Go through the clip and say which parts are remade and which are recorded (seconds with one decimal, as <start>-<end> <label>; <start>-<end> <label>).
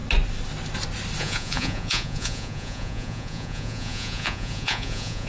0.0-1.2 recorded; 1.2-5.3 remade